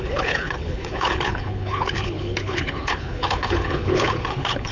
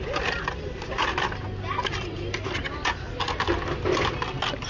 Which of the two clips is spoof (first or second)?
first